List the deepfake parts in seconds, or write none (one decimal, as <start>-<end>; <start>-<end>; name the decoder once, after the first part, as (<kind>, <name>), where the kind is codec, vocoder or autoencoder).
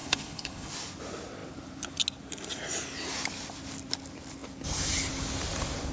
0.0-0.7 (codec, HILCodec)